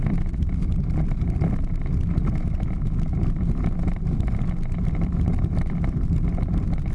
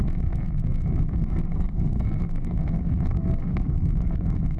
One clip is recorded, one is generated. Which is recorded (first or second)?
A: first